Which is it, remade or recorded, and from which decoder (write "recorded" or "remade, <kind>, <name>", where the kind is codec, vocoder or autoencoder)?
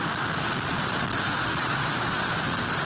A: remade, vocoder, BigVGAN v2